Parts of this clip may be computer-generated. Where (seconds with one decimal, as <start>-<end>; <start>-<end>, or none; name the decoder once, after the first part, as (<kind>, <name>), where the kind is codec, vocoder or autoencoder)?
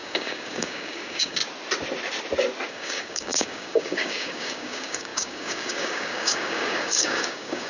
0.0-1.4 (codec, DAC); 2.7-7.7